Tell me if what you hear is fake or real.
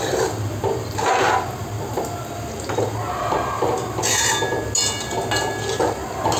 real